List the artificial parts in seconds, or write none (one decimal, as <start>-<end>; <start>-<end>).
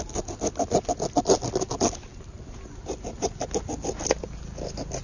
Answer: none